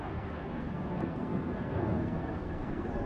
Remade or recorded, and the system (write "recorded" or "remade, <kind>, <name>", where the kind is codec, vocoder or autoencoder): remade, codec, SNAC